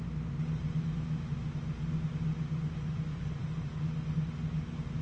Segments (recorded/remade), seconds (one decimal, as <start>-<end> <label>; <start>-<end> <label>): 0.0-5.0 recorded